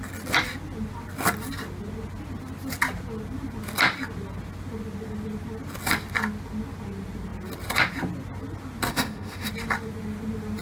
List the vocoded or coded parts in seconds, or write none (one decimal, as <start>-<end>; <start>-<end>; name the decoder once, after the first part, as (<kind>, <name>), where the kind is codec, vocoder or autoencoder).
8.9-9.5 (autoencoder, DAC-VAE)